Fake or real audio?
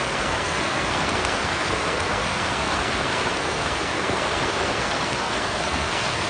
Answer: fake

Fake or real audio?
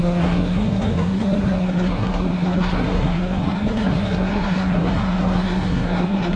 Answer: fake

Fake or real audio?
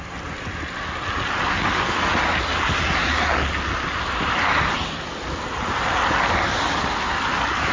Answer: real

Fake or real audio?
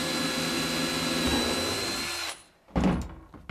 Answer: real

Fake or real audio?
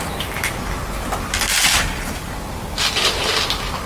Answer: real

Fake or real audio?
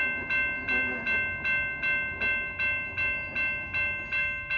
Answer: real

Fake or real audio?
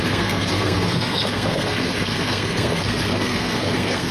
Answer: fake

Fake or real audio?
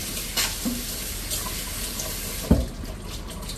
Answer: real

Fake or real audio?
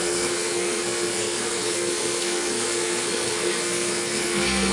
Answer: fake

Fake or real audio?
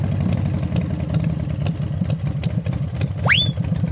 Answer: real